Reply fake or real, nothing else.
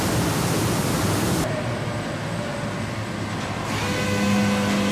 real